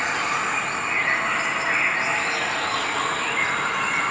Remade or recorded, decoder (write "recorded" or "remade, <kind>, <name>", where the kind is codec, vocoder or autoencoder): recorded